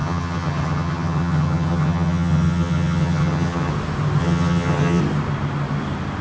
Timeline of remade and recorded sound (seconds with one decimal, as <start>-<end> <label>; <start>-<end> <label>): 0.0-3.7 remade; 3.7-4.2 recorded; 4.2-5.0 remade; 5.0-6.2 recorded